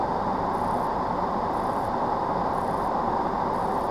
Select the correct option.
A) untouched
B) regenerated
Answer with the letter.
A